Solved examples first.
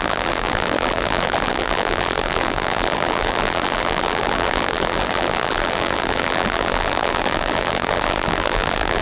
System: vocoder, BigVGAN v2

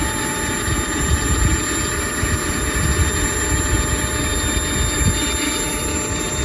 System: none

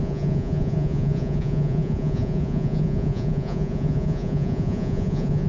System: vocoder, Vocos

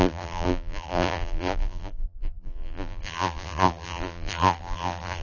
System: vocoder, BigVGAN v2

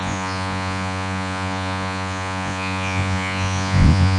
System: vocoder, Vocos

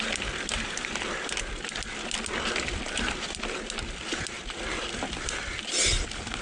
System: none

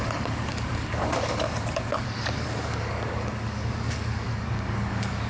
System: codec, DAC